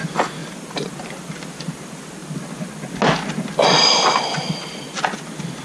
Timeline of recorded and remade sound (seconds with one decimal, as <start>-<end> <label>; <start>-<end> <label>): 0.0-0.4 recorded; 0.4-1.3 remade; 1.3-5.6 recorded